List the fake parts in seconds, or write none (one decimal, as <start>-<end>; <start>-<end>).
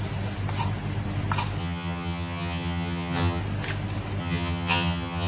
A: 1.6-3.4; 4.2-5.3